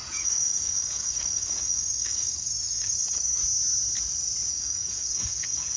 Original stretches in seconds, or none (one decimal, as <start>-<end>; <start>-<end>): 3.4-4.5